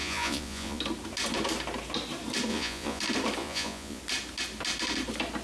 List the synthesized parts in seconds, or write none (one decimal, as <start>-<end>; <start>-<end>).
0.0-0.8; 2.5-3.0; 3.4-4.0